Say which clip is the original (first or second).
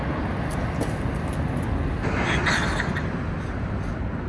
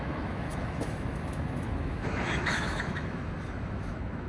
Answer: first